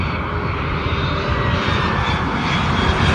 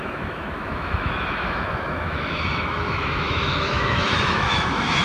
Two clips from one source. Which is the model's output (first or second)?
second